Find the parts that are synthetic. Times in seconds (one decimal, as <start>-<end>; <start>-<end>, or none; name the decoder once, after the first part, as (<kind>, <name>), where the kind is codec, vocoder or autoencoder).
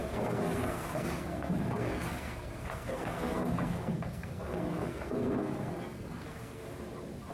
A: 0.0-6.6 (codec, SNAC)